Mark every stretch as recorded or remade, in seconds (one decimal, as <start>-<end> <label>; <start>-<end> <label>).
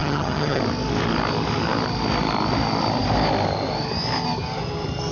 0.0-0.6 remade; 0.6-5.1 recorded